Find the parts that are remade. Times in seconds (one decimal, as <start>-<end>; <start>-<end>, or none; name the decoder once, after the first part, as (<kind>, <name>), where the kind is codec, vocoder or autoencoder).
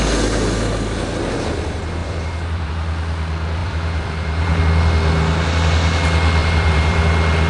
2.0-2.7 (vocoder, BigVGAN v2); 3.6-4.6; 6.4-7.0